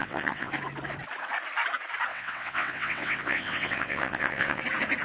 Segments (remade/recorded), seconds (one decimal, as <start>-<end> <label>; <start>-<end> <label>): 0.0-0.5 remade; 0.5-2.1 recorded; 2.1-4.6 remade; 4.6-5.0 recorded